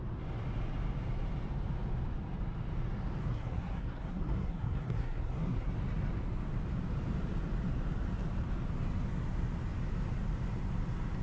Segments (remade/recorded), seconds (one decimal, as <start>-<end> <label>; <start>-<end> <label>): 0.0-3.2 recorded; 3.2-5.7 remade; 5.7-11.2 recorded